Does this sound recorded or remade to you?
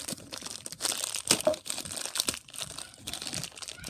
recorded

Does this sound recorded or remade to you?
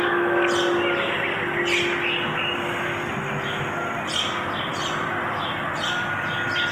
recorded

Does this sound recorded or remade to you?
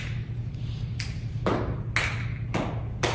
recorded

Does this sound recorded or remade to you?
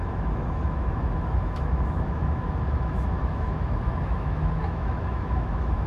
remade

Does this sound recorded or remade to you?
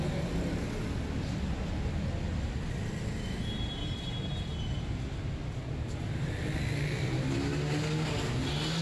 recorded